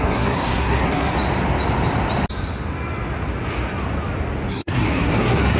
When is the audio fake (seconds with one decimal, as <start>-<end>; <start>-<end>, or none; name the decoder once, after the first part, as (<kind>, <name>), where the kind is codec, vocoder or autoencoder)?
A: 0.0-1.1 (codec, SNAC); 4.5-5.6